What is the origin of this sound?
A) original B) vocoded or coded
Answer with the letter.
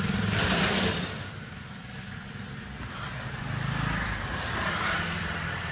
B